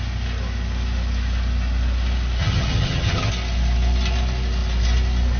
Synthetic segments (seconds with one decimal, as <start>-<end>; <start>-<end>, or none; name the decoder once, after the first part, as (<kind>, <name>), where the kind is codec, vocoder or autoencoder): 2.4-3.3 (vocoder, HiFi-GAN)